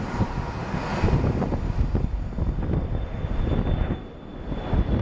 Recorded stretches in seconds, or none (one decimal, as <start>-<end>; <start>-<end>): 0.0-5.0